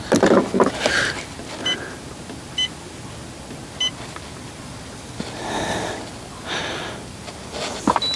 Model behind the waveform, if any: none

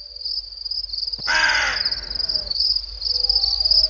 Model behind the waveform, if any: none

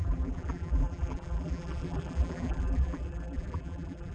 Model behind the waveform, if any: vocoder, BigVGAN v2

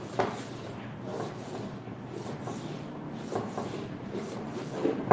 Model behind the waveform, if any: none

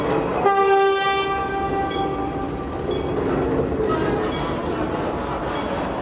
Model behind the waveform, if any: none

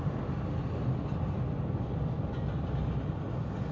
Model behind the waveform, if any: none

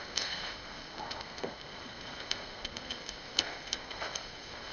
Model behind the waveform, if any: codec, SNAC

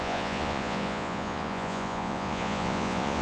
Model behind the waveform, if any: vocoder, Vocos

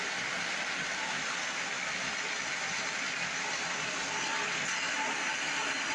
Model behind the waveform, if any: none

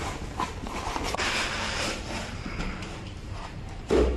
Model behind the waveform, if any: vocoder, BigVGAN v2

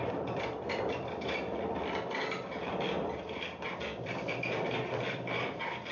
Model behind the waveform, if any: vocoder, BigVGAN v2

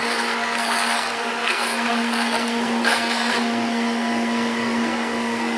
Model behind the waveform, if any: codec, SNAC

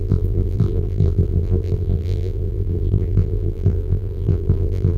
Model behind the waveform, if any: vocoder, BigVGAN v2